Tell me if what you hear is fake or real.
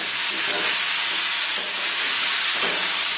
real